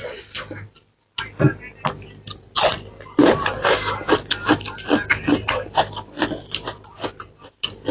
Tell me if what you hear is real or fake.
real